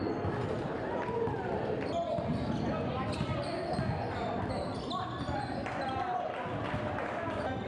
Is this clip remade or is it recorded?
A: recorded